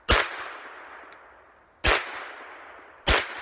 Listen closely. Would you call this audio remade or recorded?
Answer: recorded